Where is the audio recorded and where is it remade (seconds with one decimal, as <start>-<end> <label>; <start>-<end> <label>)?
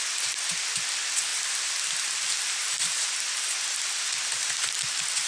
0.0-5.3 recorded